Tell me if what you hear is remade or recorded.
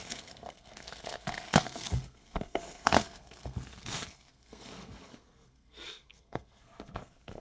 remade